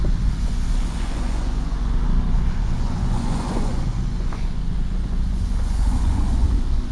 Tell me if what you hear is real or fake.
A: fake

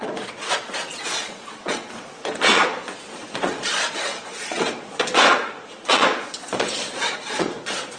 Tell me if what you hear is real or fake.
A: fake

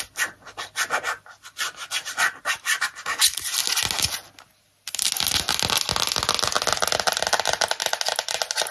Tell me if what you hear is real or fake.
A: real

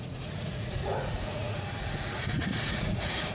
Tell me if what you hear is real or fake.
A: fake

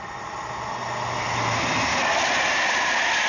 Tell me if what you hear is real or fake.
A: real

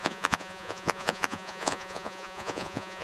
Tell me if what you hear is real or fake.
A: fake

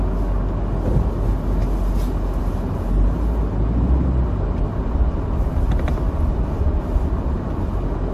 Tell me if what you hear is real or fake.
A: real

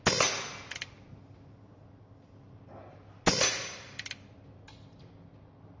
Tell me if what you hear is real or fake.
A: real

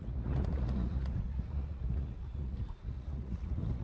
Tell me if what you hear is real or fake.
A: fake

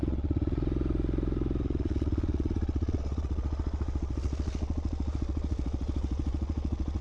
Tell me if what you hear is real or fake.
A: fake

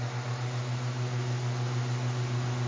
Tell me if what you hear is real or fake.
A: real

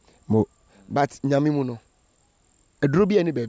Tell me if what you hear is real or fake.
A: real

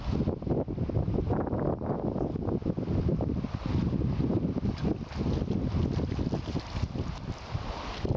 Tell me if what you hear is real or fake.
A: real